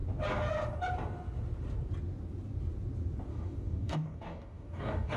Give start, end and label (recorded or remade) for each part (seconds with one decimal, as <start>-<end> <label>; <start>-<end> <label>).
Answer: 0.0-3.3 recorded; 3.3-5.2 remade